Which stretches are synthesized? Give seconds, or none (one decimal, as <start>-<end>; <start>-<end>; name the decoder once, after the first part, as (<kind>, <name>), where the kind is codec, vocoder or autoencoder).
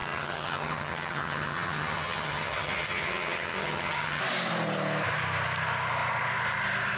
0.0-4.2 (vocoder, HiFi-GAN)